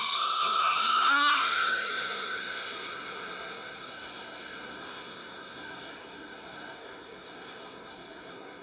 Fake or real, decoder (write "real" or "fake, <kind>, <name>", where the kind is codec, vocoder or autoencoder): fake, codec, SNAC